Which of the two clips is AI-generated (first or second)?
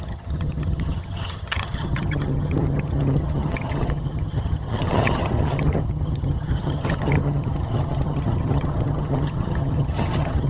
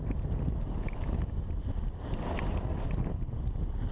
first